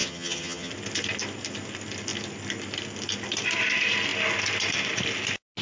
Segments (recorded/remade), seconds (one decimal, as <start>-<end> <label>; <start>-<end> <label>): 0.0-0.7 remade; 0.7-5.6 recorded